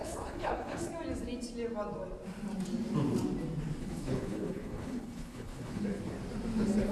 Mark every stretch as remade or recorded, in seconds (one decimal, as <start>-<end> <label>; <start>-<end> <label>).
0.0-0.9 remade; 0.9-3.8 recorded; 3.8-5.8 remade; 5.8-6.9 recorded